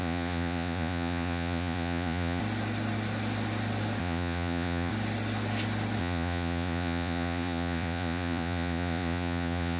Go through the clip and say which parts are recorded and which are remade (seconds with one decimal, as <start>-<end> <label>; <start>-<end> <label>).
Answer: 0.0-2.4 remade; 2.4-4.0 recorded; 4.0-4.9 remade; 4.9-6.0 recorded; 6.0-9.8 remade